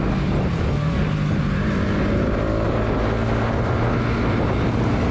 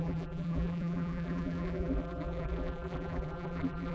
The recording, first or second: first